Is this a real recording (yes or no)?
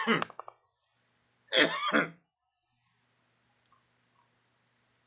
yes